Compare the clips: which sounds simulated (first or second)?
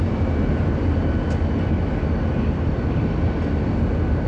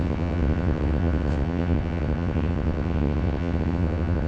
second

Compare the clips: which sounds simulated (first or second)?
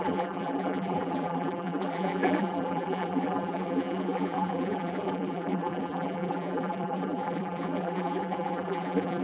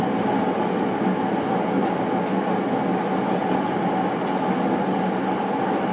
first